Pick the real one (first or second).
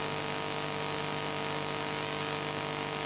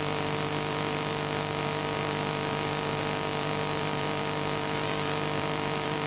first